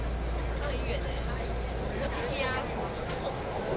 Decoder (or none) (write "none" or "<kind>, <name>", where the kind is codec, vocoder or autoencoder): none